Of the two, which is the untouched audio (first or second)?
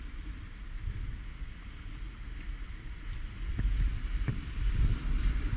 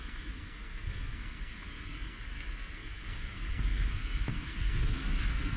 first